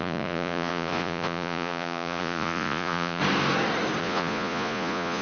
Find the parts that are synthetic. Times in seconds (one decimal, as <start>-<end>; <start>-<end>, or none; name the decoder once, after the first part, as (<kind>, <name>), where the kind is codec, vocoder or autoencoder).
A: 0.0-3.2 (vocoder, Vocos); 4.0-5.2